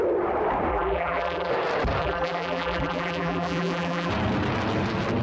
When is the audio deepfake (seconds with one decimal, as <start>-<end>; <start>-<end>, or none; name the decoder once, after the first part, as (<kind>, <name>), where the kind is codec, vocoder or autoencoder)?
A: 0.7-1.5 (vocoder, BigVGAN v2); 2.0-4.1